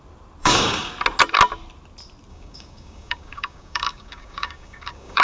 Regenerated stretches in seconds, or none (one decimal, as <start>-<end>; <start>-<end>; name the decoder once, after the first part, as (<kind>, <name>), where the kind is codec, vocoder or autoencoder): 0.4-0.9 (codec, DAC); 2.3-5.2